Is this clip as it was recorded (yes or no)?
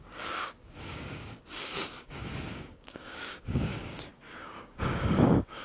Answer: no